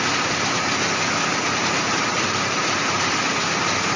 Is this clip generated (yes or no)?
no